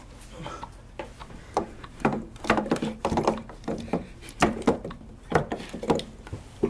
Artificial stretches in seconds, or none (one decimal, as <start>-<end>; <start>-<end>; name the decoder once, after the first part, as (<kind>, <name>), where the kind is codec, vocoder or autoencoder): 1.2-5.1 (vocoder, BigVGAN v2)